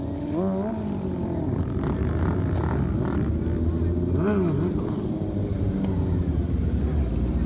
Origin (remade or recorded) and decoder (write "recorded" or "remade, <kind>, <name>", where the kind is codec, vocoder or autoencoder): recorded